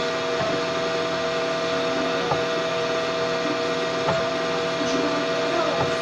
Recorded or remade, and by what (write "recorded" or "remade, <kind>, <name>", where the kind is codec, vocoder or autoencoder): recorded